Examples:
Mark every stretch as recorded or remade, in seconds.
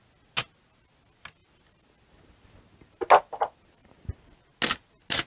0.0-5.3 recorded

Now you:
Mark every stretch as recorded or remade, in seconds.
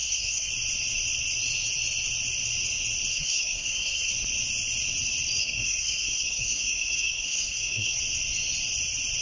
0.0-0.5 remade; 0.5-3.1 recorded; 3.1-4.1 remade; 4.1-5.4 recorded; 5.4-8.0 remade; 8.0-9.2 recorded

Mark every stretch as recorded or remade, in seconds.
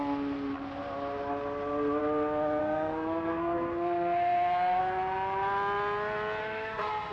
0.0-2.6 recorded; 2.6-4.8 remade; 4.8-6.4 recorded; 6.4-7.1 remade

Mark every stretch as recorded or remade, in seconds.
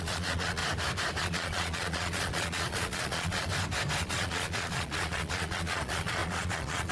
0.0-0.6 remade; 0.6-1.2 recorded; 1.2-3.5 remade; 3.5-4.0 recorded; 4.0-6.9 remade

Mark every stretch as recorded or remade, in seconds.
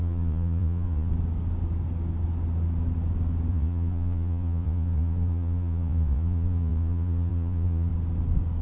0.0-1.1 remade; 1.1-3.5 recorded; 3.5-7.9 remade; 7.9-8.6 recorded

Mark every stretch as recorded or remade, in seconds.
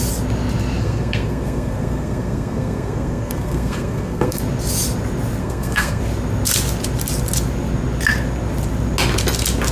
0.0-0.8 recorded; 0.8-4.4 remade; 4.4-5.4 recorded; 5.4-6.0 remade; 6.0-9.7 recorded